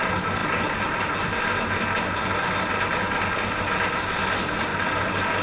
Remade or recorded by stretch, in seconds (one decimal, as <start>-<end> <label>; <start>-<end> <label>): 0.0-5.4 recorded